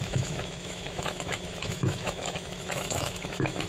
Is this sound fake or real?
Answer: fake